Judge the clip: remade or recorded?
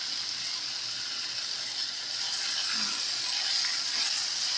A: recorded